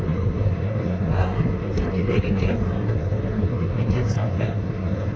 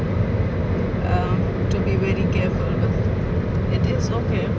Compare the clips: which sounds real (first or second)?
second